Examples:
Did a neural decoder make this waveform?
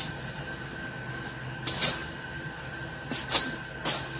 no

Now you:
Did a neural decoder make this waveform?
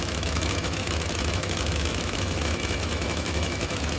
yes